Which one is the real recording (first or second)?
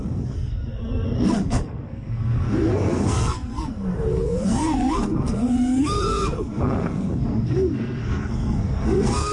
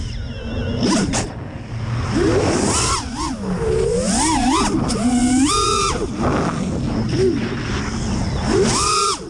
second